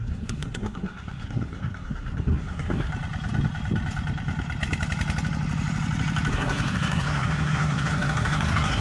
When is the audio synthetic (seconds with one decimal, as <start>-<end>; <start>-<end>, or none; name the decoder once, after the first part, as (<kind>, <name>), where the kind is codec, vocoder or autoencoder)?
0.0-2.9 (codec, SNAC); 6.3-8.8